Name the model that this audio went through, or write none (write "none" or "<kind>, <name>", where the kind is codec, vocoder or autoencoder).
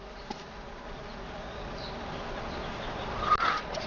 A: none